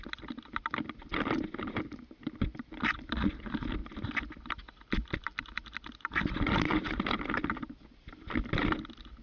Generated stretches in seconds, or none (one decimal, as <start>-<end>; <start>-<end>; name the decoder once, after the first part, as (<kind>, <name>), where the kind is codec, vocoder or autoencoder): none